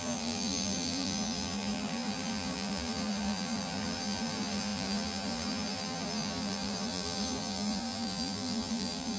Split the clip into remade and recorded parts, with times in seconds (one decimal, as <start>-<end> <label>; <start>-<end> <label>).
0.0-9.2 remade